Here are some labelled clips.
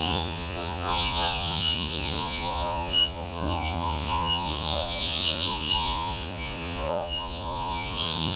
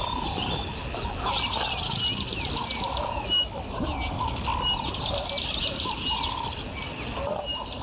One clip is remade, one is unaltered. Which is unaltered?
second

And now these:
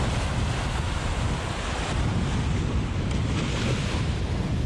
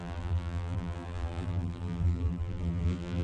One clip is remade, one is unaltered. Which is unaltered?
first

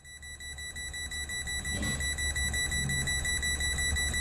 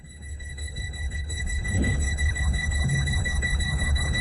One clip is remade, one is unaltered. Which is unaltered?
first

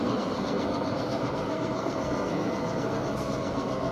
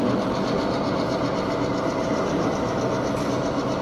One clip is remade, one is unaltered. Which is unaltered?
second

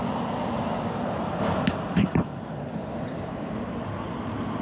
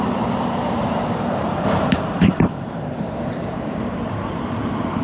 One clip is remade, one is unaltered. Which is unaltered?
first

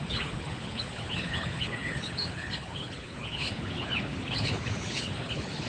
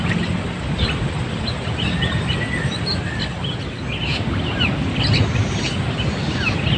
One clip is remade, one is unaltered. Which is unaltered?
second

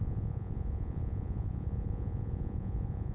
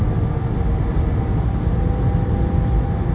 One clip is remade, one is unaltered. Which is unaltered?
second